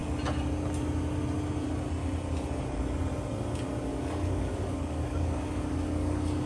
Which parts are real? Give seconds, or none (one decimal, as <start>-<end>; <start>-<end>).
0.0-3.9